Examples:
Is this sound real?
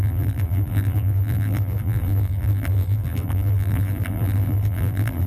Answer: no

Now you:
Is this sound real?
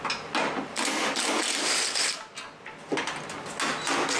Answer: yes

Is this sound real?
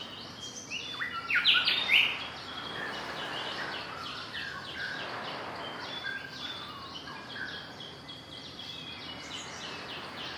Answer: yes